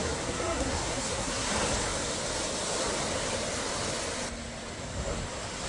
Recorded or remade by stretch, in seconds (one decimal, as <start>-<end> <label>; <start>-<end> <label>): 0.0-1.5 remade; 1.5-5.7 recorded